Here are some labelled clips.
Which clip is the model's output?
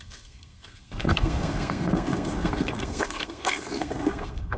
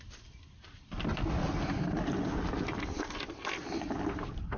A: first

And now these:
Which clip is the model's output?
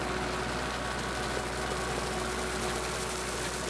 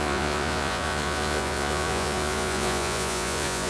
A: second